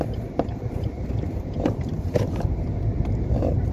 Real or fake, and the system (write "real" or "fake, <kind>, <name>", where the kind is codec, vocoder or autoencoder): fake, vocoder, BigVGAN v2